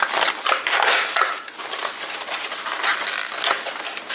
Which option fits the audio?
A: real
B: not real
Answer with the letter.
A